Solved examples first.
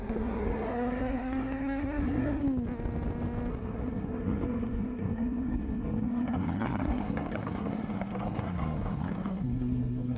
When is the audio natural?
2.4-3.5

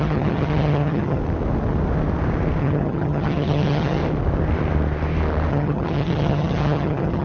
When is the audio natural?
1.2-2.6; 4.0-5.5

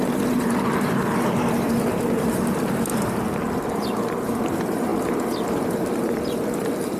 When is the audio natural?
4.9-7.0